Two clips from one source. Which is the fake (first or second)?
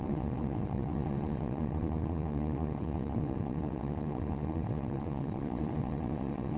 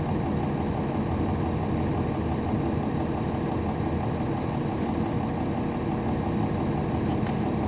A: first